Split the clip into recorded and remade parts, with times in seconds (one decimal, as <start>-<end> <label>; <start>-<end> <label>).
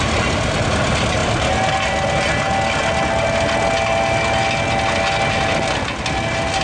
0.0-6.6 recorded